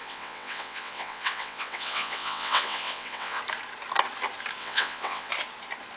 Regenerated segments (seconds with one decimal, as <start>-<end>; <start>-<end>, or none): 0.0-3.4; 4.6-5.3